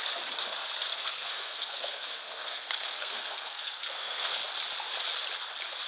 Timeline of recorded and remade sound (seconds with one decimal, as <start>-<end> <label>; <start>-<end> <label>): 0.0-0.9 recorded; 0.9-4.4 remade; 4.4-5.9 recorded